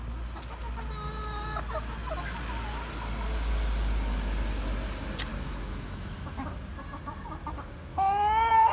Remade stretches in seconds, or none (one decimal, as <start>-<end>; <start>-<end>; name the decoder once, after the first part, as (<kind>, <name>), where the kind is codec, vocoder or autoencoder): 5.3-6.5 (autoencoder, DAC-VAE); 7.9-8.7